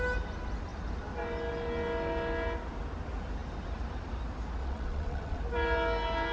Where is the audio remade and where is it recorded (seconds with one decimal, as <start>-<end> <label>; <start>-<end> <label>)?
0.0-4.6 recorded; 4.6-5.4 remade; 5.4-6.3 recorded